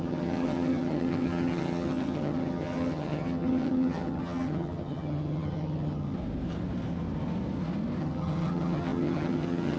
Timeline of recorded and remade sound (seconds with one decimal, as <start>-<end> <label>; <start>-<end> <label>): 0.0-6.2 remade; 6.2-8.0 recorded; 8.0-9.8 remade